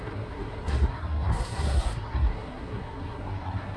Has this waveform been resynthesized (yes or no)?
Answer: yes